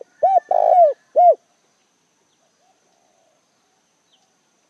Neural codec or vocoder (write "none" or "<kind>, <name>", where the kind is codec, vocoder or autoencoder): none